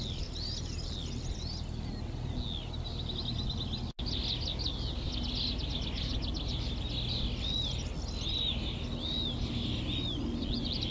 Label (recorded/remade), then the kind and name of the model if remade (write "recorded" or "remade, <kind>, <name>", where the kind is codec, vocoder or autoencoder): recorded